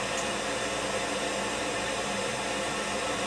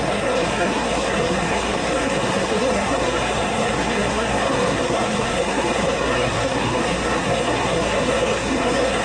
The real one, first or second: first